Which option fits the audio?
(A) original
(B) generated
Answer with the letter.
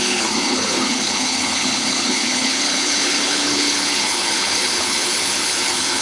B